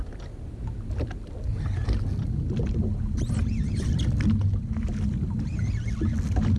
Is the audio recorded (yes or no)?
yes